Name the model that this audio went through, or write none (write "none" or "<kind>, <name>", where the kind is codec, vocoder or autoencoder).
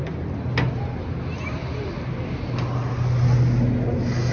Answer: none